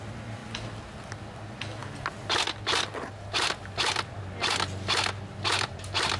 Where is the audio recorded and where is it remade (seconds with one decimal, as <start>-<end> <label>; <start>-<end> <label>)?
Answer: 0.0-6.2 recorded